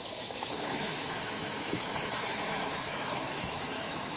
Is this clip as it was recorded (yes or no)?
no